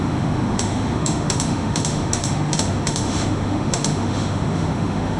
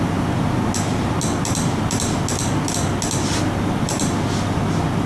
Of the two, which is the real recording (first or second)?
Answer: second